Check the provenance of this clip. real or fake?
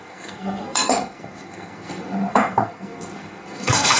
fake